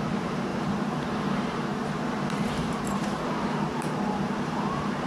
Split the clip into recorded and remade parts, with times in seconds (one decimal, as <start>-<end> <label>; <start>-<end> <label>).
0.0-5.1 remade